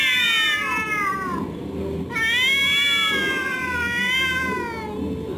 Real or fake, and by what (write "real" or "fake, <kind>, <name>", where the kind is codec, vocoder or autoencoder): real